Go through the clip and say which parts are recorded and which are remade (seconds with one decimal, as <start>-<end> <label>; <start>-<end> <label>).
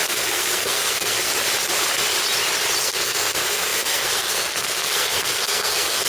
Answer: 0.0-1.3 remade; 1.3-2.8 recorded; 2.8-6.1 remade